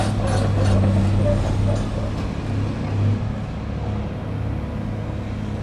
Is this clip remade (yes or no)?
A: no